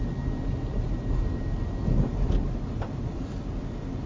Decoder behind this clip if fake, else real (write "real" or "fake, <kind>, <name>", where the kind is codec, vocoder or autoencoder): real